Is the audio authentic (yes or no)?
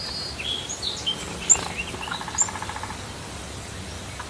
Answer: yes